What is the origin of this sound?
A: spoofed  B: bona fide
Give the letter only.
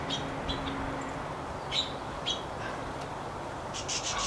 A